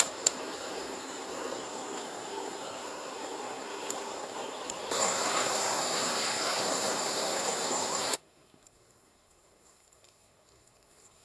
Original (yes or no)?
no